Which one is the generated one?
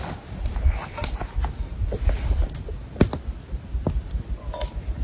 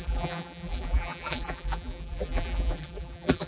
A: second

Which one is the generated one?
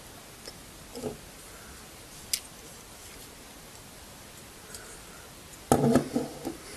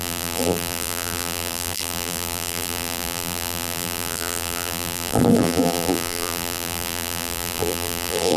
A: second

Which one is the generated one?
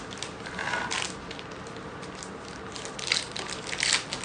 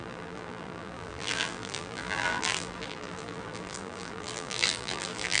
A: second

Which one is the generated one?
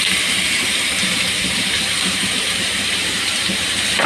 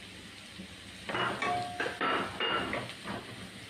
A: first